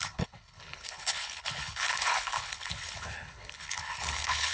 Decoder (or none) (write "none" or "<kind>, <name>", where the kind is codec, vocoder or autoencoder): codec, HILCodec